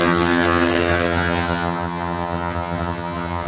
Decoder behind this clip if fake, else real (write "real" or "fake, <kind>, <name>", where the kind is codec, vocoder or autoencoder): fake, vocoder, HiFi-GAN